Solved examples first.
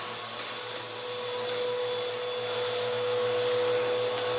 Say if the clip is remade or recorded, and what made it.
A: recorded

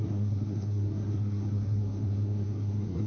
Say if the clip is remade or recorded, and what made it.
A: remade, codec, SNAC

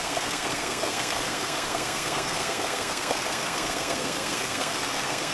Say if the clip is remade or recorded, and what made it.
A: remade, codec, SNAC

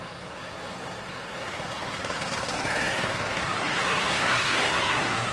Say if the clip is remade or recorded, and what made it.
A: remade, codec, SNAC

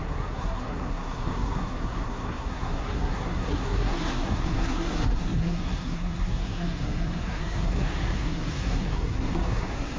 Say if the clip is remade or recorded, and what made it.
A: remade, codec, SNAC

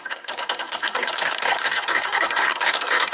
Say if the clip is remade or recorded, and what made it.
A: remade, codec, SNAC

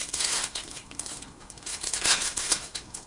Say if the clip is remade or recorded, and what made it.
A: remade, codec, SNAC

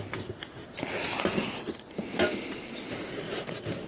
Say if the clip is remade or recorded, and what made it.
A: recorded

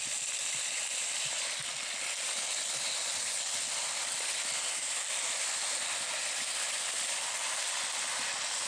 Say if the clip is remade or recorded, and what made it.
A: recorded